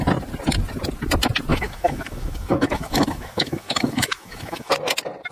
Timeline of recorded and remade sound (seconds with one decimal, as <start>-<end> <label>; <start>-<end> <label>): 0.0-1.5 recorded; 1.5-4.7 remade; 4.7-5.3 recorded